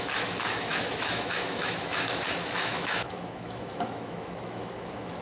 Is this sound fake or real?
fake